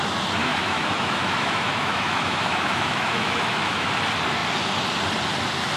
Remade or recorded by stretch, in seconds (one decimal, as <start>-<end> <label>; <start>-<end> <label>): 0.0-0.4 recorded; 0.4-3.9 remade; 3.9-5.8 recorded